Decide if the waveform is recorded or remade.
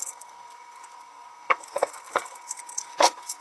remade